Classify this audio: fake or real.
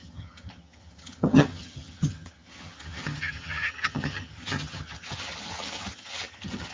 fake